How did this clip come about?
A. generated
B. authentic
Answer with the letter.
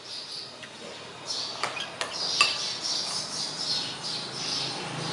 B